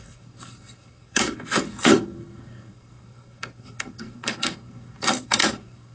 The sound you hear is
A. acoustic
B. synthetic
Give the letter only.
B